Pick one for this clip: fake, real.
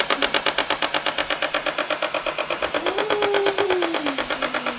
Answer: real